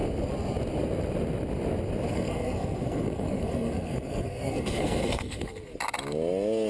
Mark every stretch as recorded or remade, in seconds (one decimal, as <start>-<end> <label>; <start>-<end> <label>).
0.0-2.1 recorded; 2.1-5.7 remade; 5.7-6.7 recorded